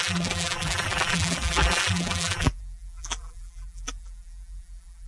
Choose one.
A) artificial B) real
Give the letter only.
A